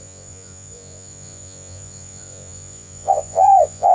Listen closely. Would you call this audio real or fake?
fake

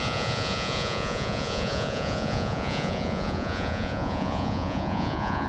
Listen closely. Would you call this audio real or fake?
fake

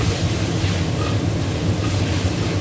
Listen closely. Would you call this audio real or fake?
real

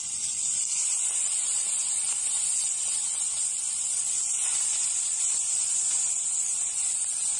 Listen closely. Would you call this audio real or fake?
real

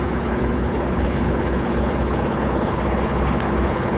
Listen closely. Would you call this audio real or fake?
fake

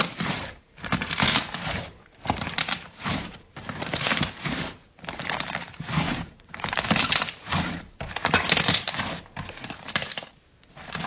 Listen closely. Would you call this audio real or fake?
fake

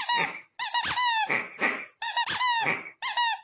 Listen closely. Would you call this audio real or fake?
real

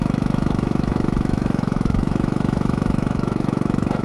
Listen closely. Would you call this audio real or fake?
fake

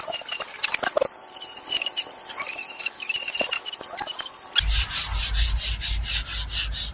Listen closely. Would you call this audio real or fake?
real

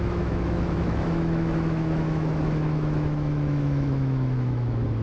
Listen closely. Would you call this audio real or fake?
fake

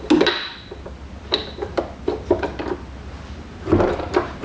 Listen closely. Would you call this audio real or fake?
real